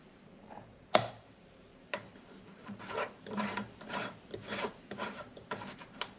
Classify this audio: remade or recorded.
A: remade